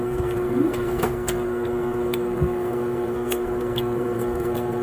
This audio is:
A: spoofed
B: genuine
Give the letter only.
A